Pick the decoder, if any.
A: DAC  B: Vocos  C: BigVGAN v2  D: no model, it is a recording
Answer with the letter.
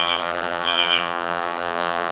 C